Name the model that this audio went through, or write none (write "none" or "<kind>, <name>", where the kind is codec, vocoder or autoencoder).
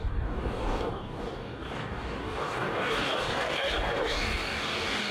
codec, DAC